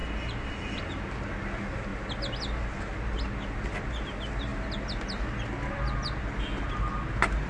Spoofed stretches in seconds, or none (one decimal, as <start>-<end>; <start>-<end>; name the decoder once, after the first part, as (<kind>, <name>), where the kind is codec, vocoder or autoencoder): 0.0-0.8 (vocoder, BigVGAN v2)